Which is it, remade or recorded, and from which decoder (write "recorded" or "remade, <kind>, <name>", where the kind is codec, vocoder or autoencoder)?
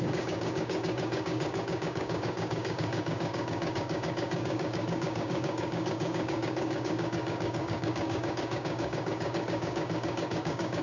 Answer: remade, codec, DAC